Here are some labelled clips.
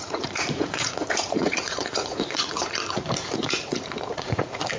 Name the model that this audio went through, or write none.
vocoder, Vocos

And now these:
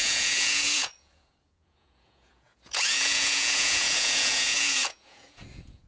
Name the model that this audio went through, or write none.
vocoder, Vocos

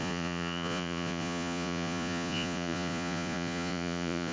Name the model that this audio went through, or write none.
vocoder, Vocos